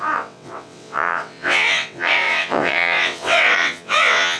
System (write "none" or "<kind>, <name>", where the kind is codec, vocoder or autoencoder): vocoder, WaveNeXt